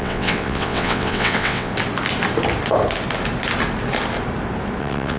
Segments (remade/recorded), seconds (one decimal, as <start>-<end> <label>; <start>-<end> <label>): 0.0-1.7 remade; 1.7-4.8 recorded; 4.8-5.2 remade